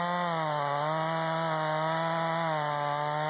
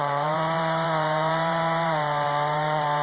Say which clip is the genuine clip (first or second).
first